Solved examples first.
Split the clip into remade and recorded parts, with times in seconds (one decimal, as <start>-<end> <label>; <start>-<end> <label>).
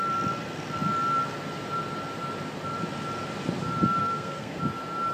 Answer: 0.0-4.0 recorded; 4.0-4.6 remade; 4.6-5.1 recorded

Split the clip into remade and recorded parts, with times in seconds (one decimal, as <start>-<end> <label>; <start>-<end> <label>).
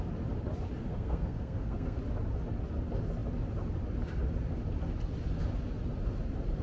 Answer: 0.0-0.8 recorded; 0.8-2.0 remade; 2.0-6.6 recorded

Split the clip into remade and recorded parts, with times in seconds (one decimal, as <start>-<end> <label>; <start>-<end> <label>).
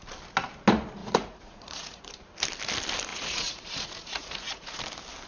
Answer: 0.0-1.0 recorded; 1.0-2.0 remade; 2.0-3.1 recorded; 3.1-4.8 remade; 4.8-5.3 recorded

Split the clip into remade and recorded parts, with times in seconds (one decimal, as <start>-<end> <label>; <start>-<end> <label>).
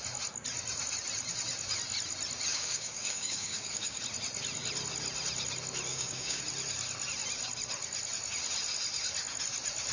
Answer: 0.0-2.5 recorded; 2.5-4.0 remade; 4.0-5.9 recorded; 5.9-6.4 remade; 6.4-9.9 recorded